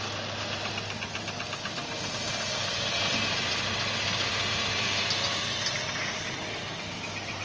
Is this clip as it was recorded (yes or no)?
yes